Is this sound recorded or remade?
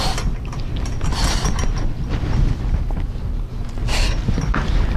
recorded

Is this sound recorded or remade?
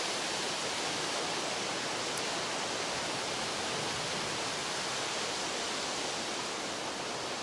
recorded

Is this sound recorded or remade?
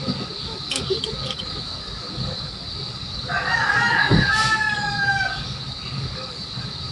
remade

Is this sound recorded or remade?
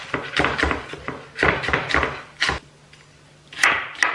recorded